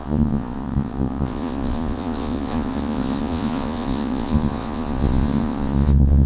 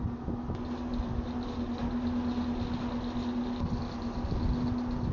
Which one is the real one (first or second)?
second